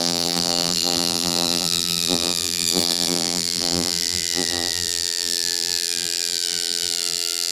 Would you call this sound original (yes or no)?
no